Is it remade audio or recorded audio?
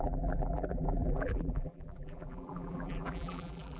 remade